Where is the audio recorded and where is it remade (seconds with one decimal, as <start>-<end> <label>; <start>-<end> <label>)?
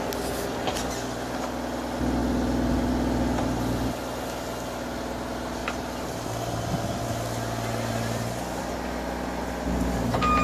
0.0-5.6 recorded; 5.6-6.4 remade; 6.4-7.9 recorded; 7.9-8.6 remade; 8.6-10.4 recorded